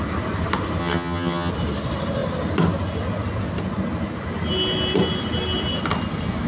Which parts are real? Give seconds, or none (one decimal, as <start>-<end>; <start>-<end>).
0.0-0.8; 1.5-6.5